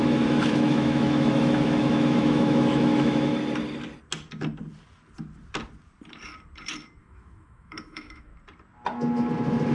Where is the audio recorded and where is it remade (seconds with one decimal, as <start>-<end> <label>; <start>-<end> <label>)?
0.0-3.3 remade; 3.3-7.0 recorded; 7.0-8.3 remade; 8.3-9.7 recorded